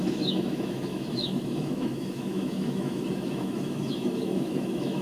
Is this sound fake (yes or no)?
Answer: yes